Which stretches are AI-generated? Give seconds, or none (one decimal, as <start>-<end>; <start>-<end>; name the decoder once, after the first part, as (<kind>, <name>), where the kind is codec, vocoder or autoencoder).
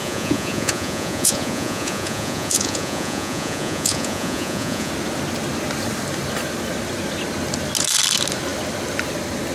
0.0-4.9 (vocoder, Vocos)